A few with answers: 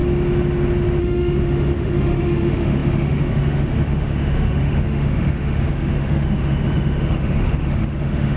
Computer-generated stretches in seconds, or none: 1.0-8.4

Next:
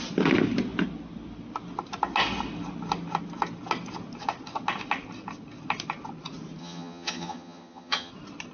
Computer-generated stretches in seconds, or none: 6.6-8.1

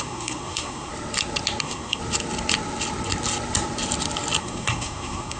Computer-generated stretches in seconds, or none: 0.0-0.9; 1.6-2.0; 4.4-5.4